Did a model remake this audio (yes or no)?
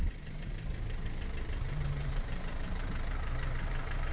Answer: yes